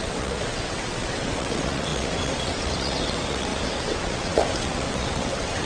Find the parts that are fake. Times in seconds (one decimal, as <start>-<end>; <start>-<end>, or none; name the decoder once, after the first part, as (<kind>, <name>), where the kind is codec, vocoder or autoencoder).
0.0-5.7 (vocoder, WaveNeXt)